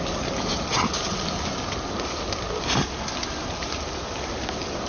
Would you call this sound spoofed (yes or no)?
no